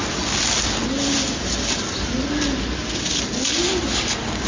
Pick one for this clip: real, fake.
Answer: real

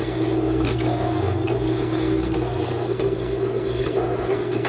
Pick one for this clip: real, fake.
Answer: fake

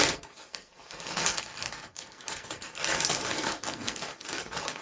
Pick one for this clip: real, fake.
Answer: fake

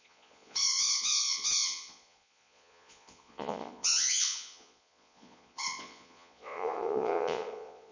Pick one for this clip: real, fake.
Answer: fake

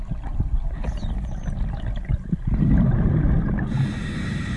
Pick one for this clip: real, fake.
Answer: real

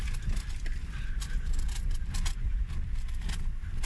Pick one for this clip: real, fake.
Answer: real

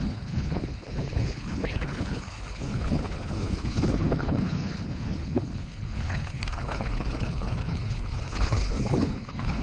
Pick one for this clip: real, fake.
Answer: fake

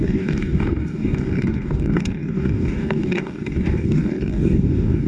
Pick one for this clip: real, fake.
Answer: fake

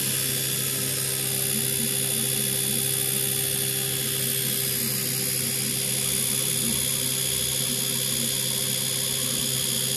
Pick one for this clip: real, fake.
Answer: real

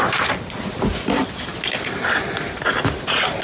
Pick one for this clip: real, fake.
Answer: real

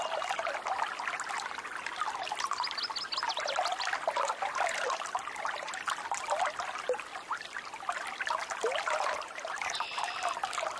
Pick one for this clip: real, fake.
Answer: real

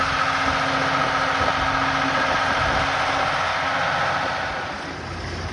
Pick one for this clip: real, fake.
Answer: real